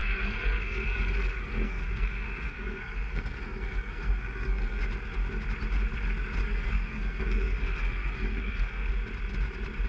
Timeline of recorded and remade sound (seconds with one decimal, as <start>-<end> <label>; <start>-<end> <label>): 0.0-4.8 remade; 4.8-6.4 recorded; 6.4-8.9 remade; 8.9-9.9 recorded

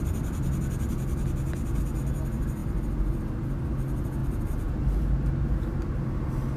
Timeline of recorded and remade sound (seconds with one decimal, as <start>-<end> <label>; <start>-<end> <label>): 0.0-6.6 recorded

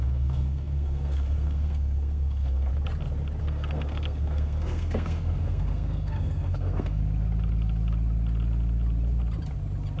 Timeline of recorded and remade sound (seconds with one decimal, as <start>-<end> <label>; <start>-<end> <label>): 0.0-2.7 remade; 2.7-3.4 recorded; 3.4-7.0 remade; 7.0-10.0 recorded

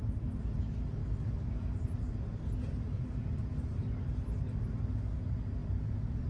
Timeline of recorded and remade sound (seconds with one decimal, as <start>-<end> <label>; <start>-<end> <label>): 0.0-6.3 recorded

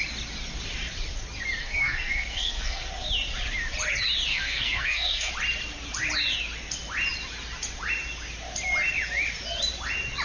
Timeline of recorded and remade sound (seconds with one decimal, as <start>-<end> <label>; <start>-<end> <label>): 0.0-1.6 recorded; 1.6-2.9 remade; 2.9-4.3 recorded; 4.3-5.3 remade; 5.3-10.2 recorded